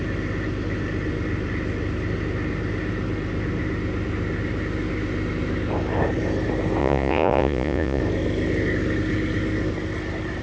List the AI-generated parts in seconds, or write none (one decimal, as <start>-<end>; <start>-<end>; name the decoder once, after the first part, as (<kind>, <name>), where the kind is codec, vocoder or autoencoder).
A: 6.8-8.0 (vocoder, Vocos)